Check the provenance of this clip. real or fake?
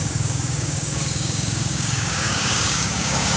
fake